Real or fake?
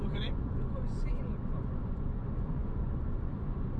fake